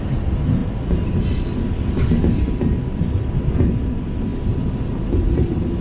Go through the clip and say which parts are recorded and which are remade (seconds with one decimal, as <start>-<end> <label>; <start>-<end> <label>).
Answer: 0.0-5.8 recorded